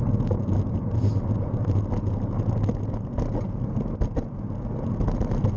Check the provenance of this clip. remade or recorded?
recorded